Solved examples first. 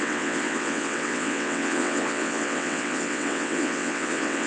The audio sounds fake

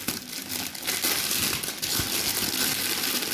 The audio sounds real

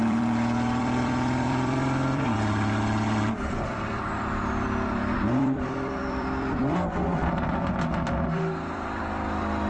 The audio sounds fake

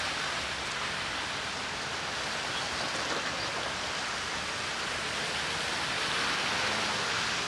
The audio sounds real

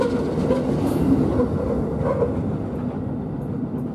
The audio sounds real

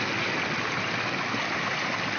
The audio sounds real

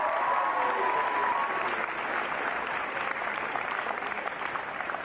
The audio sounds real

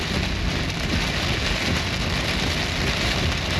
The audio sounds real